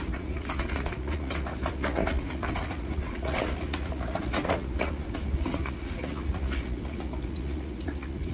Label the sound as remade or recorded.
remade